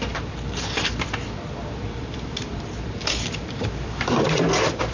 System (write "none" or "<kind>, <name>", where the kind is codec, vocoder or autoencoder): vocoder, BigVGAN v2